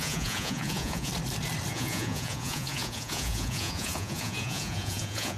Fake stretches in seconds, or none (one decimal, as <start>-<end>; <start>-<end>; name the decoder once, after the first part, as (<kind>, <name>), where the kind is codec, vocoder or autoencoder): 0.0-1.1 (vocoder, Vocos); 1.7-5.4